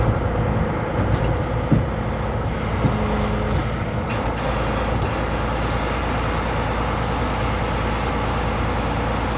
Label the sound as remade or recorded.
recorded